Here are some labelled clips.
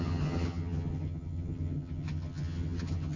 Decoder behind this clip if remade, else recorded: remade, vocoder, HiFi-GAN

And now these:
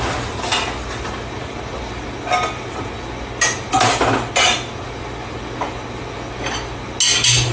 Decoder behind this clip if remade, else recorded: recorded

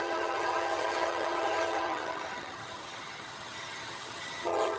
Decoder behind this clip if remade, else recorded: remade, vocoder, HiFi-GAN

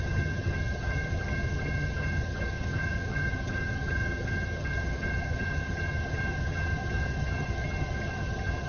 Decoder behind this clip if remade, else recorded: remade, vocoder, HiFi-GAN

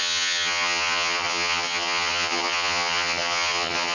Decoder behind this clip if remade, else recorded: remade, vocoder, HiFi-GAN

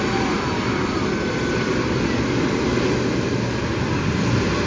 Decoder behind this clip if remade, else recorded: recorded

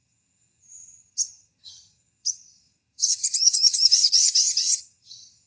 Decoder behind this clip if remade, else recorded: remade, vocoder, HiFi-GAN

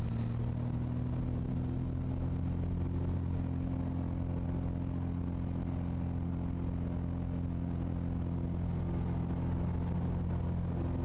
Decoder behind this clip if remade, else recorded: recorded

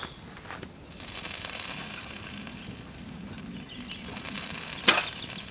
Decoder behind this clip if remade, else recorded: recorded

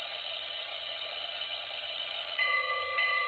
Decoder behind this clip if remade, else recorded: remade, vocoder, HiFi-GAN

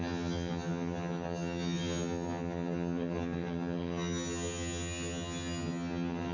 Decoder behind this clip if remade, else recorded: remade, vocoder, HiFi-GAN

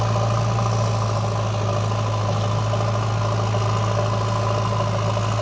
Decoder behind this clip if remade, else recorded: recorded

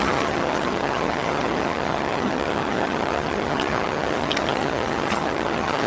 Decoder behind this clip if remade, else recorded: remade, vocoder, HiFi-GAN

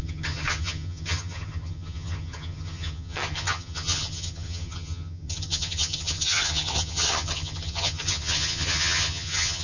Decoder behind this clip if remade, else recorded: remade, vocoder, HiFi-GAN